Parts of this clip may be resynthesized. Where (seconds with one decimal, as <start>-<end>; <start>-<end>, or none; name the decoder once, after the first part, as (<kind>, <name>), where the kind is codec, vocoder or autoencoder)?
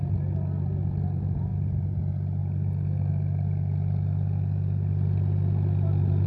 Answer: none